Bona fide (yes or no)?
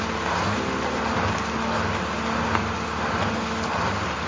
yes